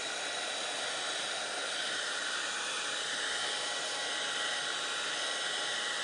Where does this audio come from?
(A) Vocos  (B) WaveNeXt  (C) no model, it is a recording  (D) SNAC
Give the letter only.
C